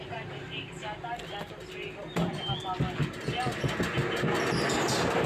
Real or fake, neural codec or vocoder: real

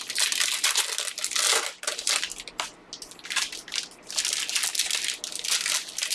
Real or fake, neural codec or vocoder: real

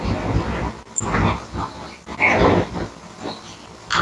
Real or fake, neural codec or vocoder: real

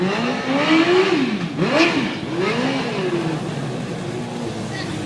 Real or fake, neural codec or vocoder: real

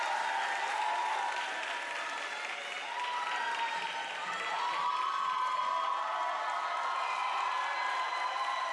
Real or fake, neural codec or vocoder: real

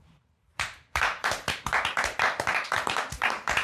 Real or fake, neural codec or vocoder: fake, vocoder, BigVGAN v2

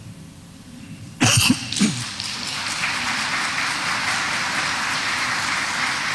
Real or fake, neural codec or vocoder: fake, vocoder, BigVGAN v2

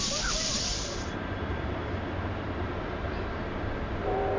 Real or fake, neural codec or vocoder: fake, vocoder, BigVGAN v2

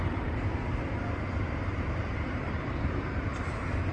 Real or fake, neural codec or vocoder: fake, vocoder, BigVGAN v2